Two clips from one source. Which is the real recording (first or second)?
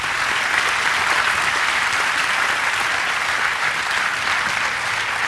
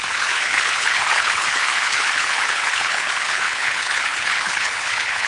first